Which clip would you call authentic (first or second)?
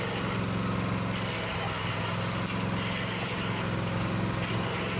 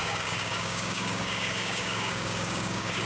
first